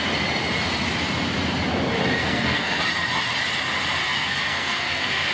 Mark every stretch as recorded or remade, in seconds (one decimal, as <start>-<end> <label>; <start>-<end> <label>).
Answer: 0.0-2.2 recorded; 2.2-2.8 remade; 2.8-4.0 recorded; 4.0-5.3 remade